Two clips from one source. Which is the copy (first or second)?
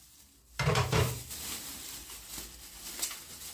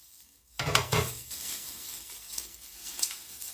second